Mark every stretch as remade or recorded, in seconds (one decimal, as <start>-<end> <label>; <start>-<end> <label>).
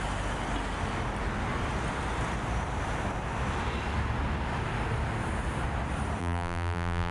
0.0-6.2 recorded; 6.2-7.1 remade